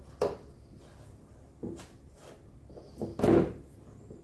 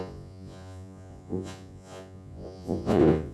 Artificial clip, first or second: second